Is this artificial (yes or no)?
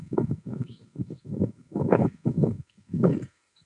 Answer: yes